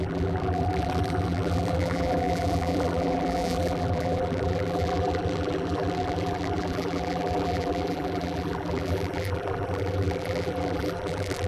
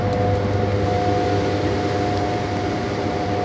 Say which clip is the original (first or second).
second